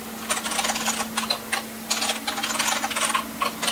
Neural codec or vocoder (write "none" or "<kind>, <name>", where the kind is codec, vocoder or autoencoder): none